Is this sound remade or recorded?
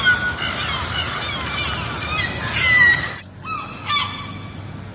recorded